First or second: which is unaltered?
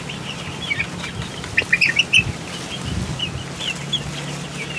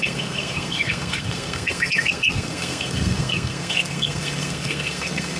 first